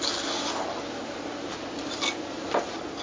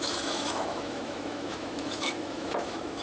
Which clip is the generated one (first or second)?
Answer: second